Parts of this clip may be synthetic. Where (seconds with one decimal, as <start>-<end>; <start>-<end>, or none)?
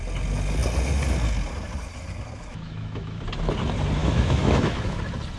2.5-3.2; 4.0-5.0